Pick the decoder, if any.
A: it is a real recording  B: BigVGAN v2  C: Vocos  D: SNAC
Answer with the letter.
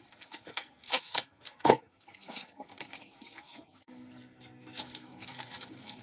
D